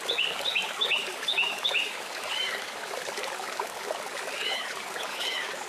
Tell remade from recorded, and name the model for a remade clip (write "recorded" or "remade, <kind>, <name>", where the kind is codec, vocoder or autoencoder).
remade, codec, DAC